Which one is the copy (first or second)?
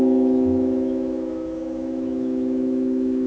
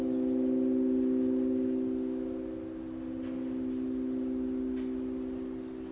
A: first